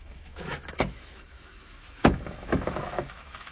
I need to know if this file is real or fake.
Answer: fake